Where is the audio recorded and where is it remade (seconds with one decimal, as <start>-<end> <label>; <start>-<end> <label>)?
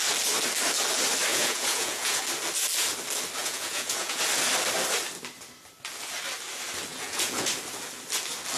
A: 0.0-1.3 recorded; 1.3-2.2 remade; 2.2-3.4 recorded; 3.4-4.2 remade; 4.2-6.9 recorded; 6.9-7.5 remade; 7.5-8.6 recorded